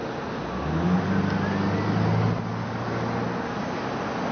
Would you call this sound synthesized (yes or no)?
no